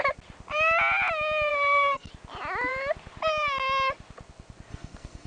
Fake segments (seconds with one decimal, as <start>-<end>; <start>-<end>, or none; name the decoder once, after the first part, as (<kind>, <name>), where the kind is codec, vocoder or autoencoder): 1.5-2.1 (codec, SNAC); 4.7-5.3